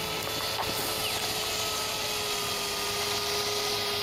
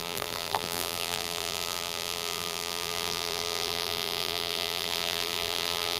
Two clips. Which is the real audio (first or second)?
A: first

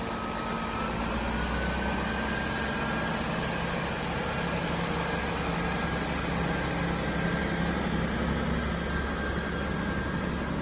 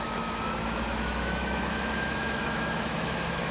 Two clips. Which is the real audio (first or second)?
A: first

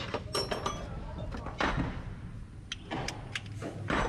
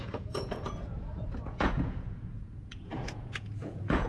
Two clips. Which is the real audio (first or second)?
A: first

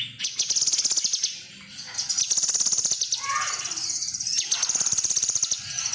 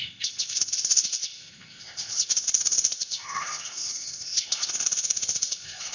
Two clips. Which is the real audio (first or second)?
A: first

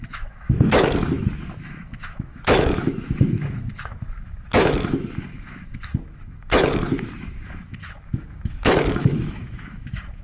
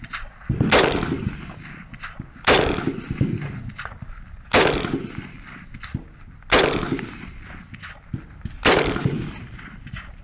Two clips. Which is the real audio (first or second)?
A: second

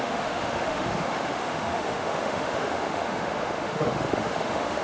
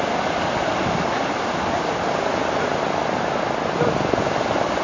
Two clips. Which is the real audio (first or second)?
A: second